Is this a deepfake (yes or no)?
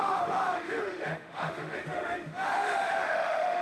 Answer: yes